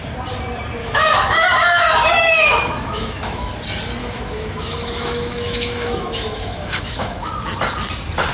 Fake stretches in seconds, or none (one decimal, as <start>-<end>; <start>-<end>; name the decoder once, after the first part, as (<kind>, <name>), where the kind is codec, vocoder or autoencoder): 0.8-3.5 (autoencoder, DAC-VAE); 4.0-7.3